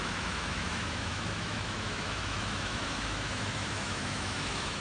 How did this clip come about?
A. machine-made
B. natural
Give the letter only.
A